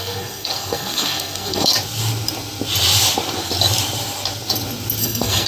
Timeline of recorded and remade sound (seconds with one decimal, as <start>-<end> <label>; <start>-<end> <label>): 0.0-1.7 remade; 1.7-5.0 recorded; 5.0-5.5 remade